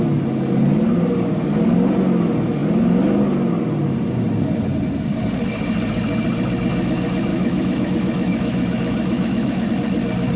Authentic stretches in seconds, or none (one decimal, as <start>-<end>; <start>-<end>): 0.0-7.3; 9.7-10.4